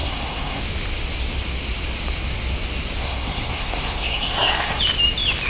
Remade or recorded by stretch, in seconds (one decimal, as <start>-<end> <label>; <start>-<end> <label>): 0.0-0.6 remade; 0.6-3.0 recorded; 3.0-4.8 remade; 4.8-5.5 recorded